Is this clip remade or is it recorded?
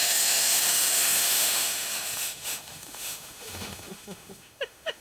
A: remade